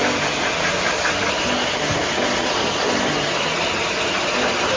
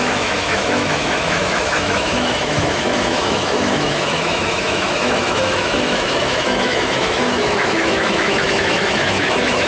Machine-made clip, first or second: second